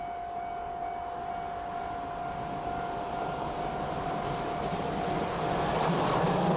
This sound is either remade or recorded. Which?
recorded